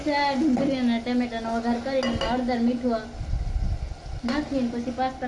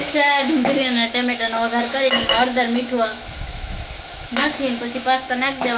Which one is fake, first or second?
second